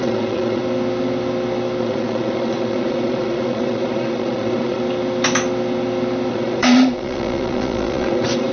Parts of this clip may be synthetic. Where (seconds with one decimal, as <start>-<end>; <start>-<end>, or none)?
0.0-0.6; 1.8-4.8; 6.3-8.5